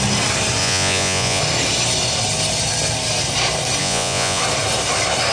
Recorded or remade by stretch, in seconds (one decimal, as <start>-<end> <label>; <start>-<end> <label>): 0.0-0.6 recorded; 0.6-1.4 remade; 1.4-3.8 recorded; 3.8-4.4 remade; 4.4-5.3 recorded